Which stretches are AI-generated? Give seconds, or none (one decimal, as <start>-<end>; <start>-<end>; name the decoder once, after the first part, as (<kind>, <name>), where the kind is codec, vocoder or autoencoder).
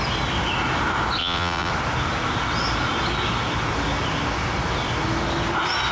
1.2-1.7 (vocoder, WaveNeXt)